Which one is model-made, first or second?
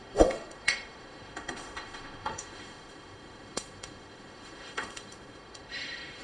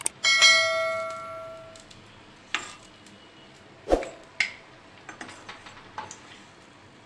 first